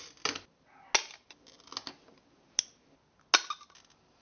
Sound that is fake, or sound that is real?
real